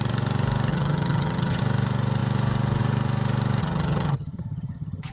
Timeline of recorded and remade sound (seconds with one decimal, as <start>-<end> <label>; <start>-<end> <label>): 0.0-0.7 recorded; 0.7-1.6 remade; 1.6-3.6 recorded; 3.6-5.1 remade